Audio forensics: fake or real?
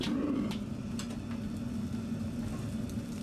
real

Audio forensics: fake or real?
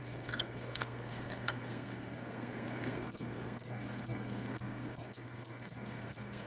fake